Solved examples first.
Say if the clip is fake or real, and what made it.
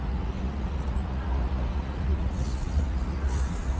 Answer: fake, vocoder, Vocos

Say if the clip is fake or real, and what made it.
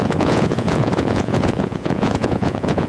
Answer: fake, vocoder, Vocos